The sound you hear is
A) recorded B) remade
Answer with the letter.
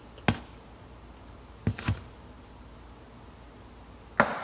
A